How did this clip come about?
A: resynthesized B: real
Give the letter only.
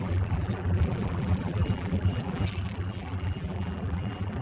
A